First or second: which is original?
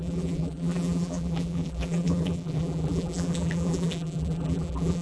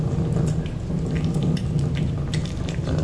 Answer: second